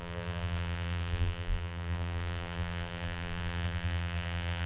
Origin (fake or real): fake